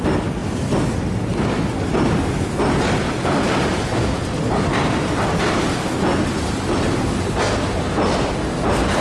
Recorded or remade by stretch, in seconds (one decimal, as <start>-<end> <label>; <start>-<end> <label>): 0.0-9.0 recorded